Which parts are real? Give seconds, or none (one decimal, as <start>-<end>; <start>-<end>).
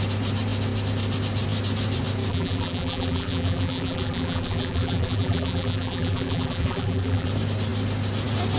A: 0.0-2.3; 7.3-8.6